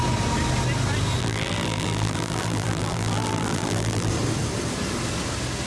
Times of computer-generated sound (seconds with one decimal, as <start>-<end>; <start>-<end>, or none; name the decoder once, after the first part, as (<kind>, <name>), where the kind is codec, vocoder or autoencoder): 1.2-4.1 (vocoder, BigVGAN v2)